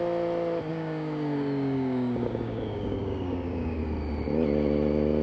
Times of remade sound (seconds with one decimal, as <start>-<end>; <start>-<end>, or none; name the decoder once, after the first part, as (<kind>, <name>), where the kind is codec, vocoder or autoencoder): 0.7-3.8 (codec, DAC)